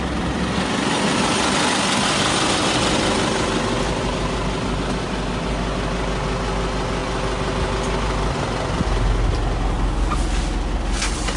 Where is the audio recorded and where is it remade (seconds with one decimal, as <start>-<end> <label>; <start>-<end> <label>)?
0.0-11.4 recorded